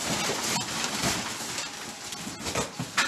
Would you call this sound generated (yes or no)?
no